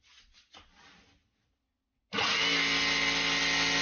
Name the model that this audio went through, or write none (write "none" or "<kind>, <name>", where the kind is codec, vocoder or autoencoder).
none